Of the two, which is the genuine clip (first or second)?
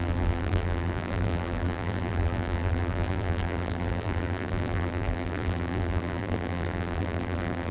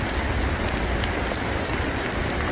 second